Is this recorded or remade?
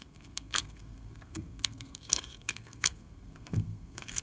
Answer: remade